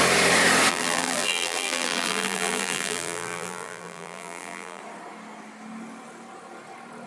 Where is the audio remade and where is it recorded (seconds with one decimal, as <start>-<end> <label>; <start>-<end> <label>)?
0.0-0.7 recorded; 0.7-4.8 remade; 4.8-7.1 recorded